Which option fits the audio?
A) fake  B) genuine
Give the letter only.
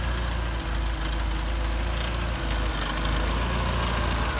B